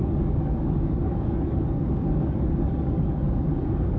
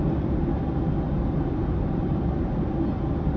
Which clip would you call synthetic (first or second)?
first